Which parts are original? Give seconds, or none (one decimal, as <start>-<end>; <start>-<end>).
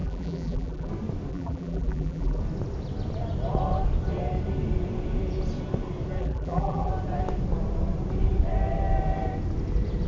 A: 0.9-1.3; 2.4-6.2; 6.9-10.1